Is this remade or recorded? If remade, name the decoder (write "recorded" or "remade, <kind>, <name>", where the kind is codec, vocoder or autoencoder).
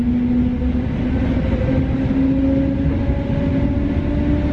recorded